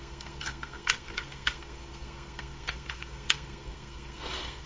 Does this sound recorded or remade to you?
remade